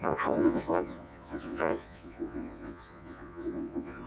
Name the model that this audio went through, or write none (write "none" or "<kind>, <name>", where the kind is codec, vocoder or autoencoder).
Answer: vocoder, Vocos